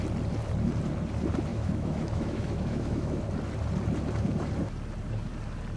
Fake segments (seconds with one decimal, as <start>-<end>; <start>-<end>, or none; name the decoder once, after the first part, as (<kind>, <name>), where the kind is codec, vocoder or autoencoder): 1.5-3.2 (autoencoder, DAC-VAE)